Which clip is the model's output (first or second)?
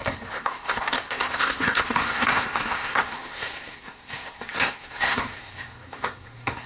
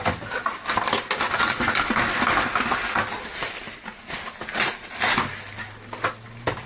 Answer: first